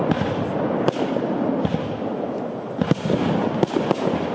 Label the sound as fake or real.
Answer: real